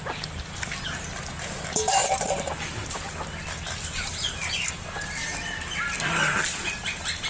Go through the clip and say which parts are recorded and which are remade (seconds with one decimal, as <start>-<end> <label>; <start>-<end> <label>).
0.0-7.3 recorded